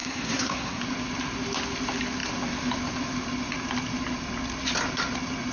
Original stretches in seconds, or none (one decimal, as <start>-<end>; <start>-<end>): 0.8-5.5